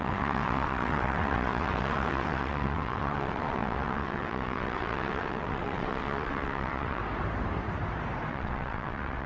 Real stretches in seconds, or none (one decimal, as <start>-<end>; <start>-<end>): 7.0-8.3